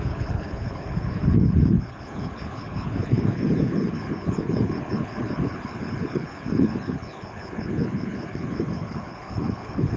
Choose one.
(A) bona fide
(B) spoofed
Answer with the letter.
B